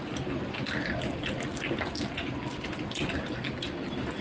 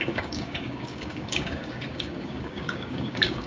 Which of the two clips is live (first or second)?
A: first